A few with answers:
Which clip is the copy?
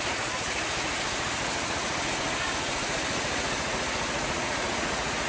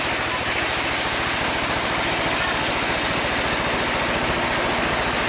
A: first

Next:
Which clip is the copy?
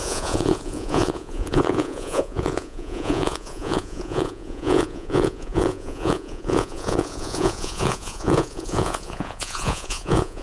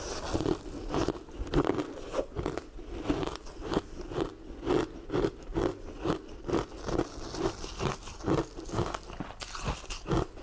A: first